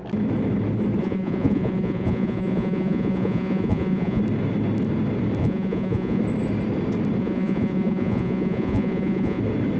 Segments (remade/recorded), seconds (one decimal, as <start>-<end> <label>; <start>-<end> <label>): 0.0-1.0 recorded; 1.0-4.2 remade; 4.2-5.4 recorded; 5.4-6.2 remade; 6.2-7.2 recorded; 7.2-9.4 remade; 9.4-9.8 recorded